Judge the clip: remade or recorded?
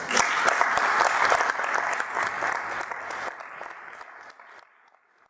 recorded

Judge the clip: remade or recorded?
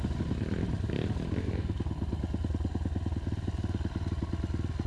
recorded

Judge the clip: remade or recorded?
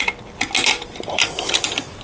recorded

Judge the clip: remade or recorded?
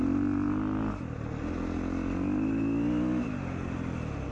recorded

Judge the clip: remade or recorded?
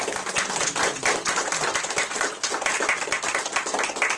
recorded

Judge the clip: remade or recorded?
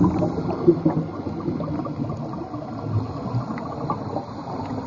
recorded